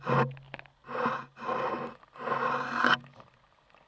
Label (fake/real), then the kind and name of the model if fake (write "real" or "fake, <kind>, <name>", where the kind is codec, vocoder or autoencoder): real